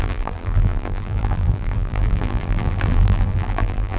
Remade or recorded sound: remade